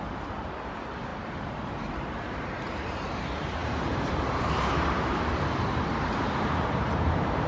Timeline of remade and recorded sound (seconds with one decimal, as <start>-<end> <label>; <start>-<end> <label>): 0.0-7.5 remade